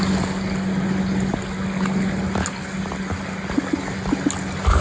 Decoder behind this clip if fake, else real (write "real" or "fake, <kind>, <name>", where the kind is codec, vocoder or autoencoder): real